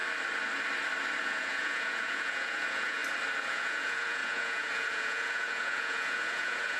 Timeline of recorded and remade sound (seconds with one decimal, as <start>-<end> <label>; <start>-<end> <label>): 0.0-1.2 recorded; 1.2-3.0 remade; 3.0-3.5 recorded; 3.5-6.8 remade